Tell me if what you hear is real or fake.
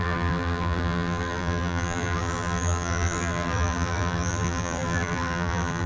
fake